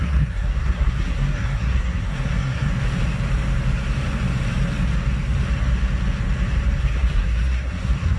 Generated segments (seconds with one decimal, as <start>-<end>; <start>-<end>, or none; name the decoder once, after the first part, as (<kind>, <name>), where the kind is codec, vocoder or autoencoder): 0.0-2.7 (codec, SNAC); 6.8-8.2